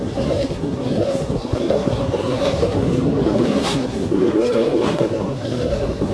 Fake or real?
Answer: fake